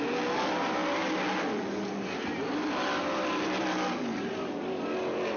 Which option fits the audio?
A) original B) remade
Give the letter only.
A